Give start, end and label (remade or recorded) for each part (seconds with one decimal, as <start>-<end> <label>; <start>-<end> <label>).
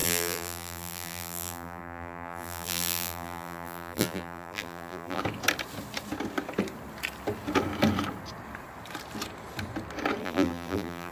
0.0-5.2 remade; 5.2-10.2 recorded; 10.2-11.1 remade